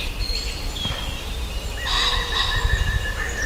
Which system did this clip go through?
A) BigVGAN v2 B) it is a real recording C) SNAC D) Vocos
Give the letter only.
A